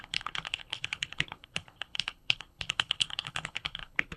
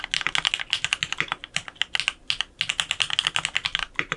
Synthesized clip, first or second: first